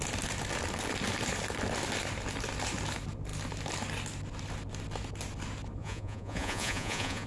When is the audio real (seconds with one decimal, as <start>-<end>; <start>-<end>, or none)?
0.0-5.8

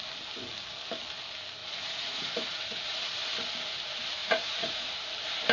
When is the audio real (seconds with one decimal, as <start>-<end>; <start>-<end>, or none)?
0.0-1.6; 3.3-4.2; 5.0-5.5